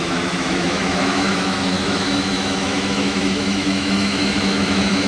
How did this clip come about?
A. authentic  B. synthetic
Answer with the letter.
B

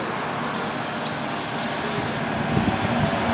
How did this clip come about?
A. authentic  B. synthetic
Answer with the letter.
A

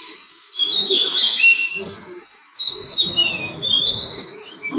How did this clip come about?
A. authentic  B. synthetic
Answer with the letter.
B